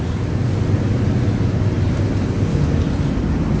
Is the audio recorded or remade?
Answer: recorded